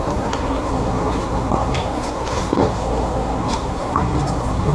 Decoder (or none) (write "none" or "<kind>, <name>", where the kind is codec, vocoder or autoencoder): codec, SNAC